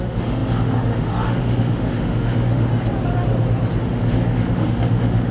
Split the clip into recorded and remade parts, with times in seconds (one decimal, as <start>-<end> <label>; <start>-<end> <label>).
0.0-2.7 remade; 2.7-3.8 recorded; 3.8-5.3 remade